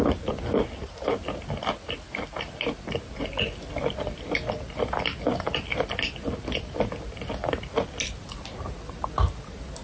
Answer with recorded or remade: recorded